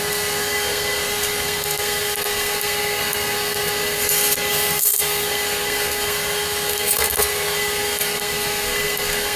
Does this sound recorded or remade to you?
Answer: remade